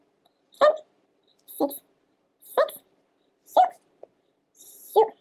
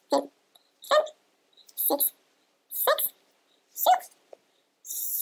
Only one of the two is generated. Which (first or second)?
first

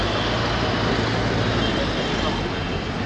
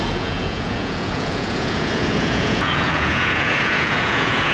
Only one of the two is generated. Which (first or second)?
second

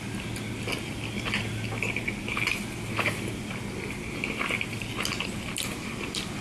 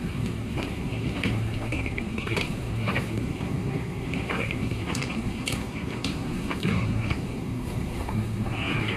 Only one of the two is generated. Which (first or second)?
second